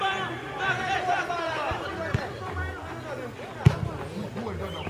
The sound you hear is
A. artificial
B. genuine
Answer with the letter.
B